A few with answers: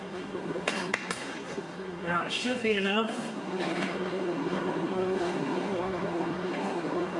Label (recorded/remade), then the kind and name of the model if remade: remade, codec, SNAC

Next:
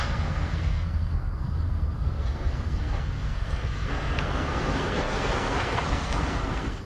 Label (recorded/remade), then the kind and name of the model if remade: remade, codec, SNAC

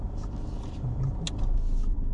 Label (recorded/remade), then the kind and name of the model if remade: recorded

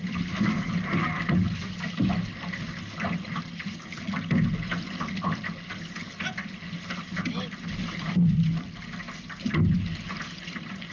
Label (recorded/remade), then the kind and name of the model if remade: recorded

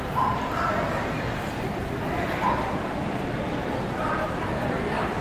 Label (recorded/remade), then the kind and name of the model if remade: recorded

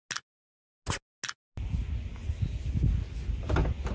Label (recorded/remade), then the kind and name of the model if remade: recorded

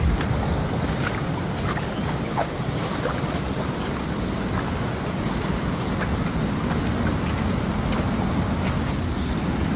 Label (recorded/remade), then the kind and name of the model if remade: recorded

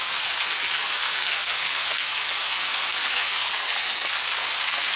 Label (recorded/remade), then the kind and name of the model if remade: remade, codec, SNAC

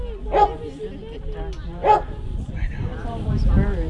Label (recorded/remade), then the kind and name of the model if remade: recorded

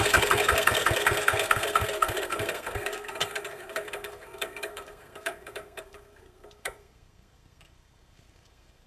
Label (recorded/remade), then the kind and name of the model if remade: remade, codec, SNAC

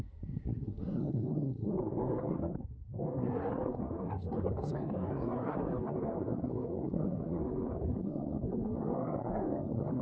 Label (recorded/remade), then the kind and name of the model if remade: remade, codec, SNAC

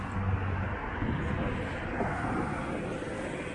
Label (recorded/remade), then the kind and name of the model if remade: recorded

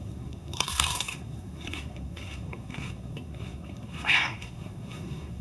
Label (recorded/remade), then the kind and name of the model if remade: remade, codec, SNAC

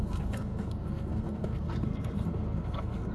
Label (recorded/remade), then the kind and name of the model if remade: remade, codec, SNAC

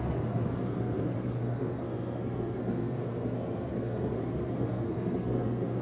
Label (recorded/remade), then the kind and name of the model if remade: remade, codec, SNAC